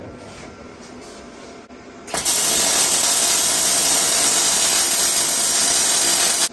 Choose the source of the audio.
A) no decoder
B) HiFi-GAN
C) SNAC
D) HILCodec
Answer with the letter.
A